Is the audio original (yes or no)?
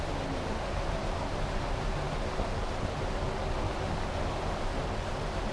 yes